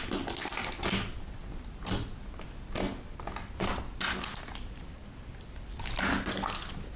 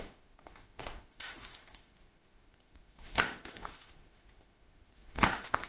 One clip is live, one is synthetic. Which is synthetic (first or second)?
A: second